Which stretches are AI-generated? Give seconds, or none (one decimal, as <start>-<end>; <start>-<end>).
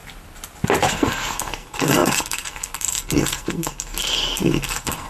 0.9-5.1